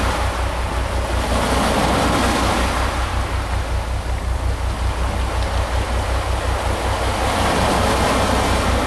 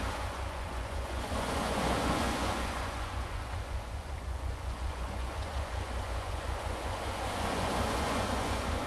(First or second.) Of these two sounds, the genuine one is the first